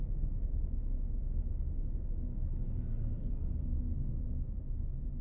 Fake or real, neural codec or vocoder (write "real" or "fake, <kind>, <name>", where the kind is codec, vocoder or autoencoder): real